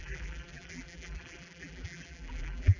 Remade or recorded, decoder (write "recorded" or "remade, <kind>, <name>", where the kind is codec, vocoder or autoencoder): remade, vocoder, BigVGAN v2